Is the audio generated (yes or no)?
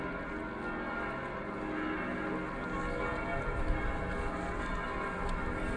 no